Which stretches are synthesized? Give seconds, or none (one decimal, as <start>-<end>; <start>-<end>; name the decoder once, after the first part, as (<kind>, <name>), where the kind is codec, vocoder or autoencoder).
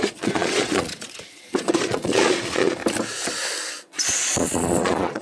0.0-2.8 (vocoder, Vocos); 3.7-5.2